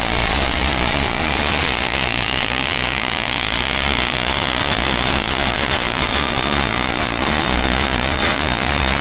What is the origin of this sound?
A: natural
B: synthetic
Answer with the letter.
B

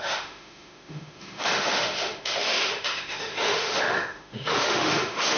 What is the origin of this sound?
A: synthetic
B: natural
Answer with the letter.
A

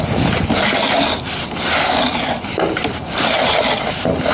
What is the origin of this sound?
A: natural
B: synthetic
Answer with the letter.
A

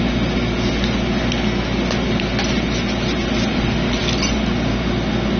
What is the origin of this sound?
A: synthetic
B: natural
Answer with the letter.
B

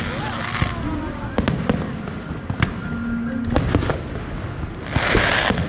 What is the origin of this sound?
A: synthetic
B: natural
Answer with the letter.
B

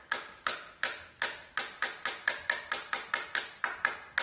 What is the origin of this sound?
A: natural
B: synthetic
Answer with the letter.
A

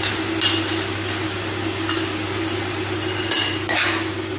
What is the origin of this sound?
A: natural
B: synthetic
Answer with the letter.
A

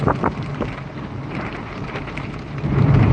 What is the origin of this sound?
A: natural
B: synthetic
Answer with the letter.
B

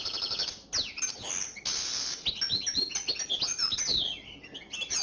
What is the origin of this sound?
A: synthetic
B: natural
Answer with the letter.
B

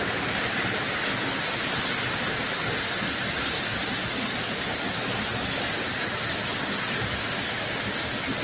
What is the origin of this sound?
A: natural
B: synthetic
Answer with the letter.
A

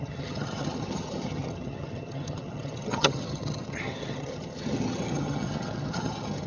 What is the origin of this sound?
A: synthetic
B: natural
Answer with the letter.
A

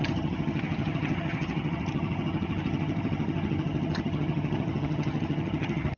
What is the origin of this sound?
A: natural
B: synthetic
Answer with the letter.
B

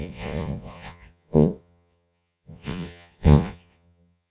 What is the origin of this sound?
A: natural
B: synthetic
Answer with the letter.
B